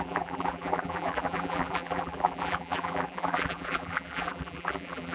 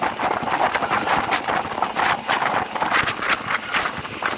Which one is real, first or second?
second